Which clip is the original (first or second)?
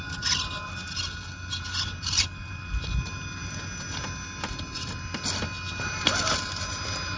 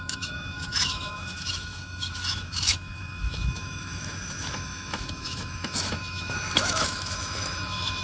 first